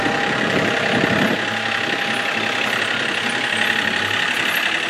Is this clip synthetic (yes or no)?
no